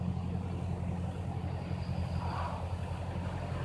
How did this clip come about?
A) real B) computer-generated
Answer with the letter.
A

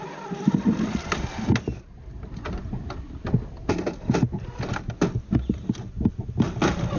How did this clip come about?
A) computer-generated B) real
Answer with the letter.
B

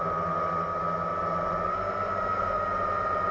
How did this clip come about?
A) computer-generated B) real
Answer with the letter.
B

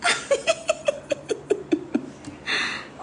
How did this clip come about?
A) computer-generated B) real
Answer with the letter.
B